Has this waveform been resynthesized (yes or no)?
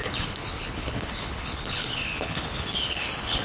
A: yes